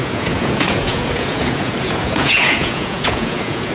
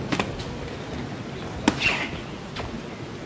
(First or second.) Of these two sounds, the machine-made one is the first